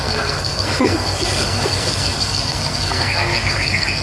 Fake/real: fake